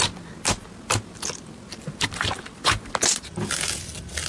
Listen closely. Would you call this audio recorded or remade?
recorded